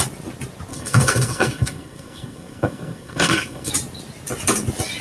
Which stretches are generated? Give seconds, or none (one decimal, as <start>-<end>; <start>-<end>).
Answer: 0.7-3.7